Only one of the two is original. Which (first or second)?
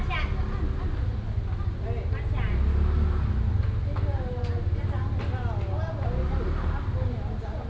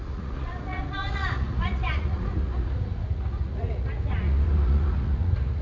first